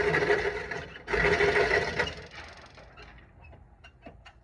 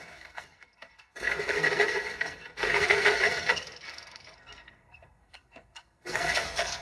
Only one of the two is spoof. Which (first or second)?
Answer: second